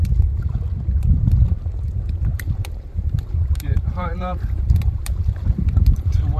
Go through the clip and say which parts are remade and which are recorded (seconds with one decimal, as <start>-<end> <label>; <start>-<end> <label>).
0.0-2.3 recorded; 2.3-6.4 remade